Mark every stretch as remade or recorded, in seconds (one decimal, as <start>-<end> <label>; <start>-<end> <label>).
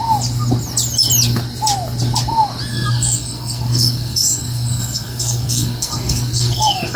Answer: 0.0-2.7 recorded; 2.7-7.0 remade